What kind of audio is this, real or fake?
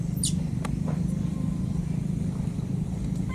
fake